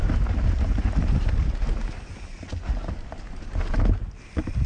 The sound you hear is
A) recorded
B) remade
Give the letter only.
A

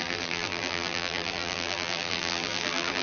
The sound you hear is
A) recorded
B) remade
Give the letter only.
B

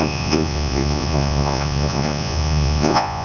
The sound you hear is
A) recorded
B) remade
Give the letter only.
B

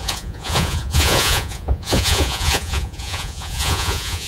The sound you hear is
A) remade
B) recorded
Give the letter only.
A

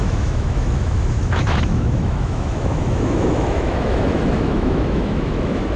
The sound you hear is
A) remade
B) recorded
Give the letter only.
A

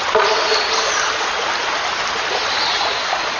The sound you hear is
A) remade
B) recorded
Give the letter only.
B